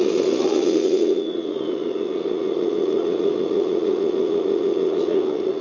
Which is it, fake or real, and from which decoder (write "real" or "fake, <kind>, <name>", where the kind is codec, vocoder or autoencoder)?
fake, vocoder, Vocos